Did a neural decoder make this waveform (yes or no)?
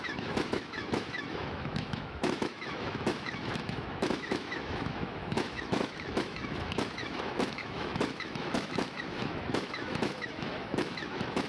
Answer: yes